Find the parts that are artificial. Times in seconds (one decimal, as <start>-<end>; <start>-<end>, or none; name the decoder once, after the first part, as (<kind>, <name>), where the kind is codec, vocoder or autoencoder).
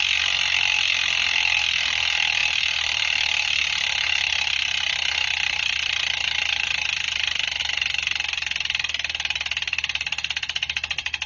none